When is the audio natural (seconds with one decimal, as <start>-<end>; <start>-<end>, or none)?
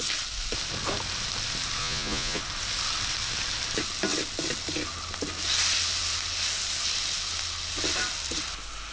0.0-1.8; 2.4-8.9